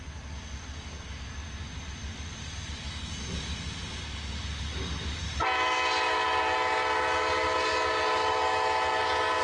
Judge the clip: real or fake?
real